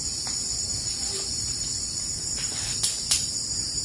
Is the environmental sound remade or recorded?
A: remade